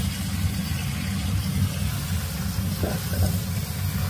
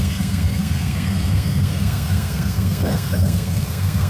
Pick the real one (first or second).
first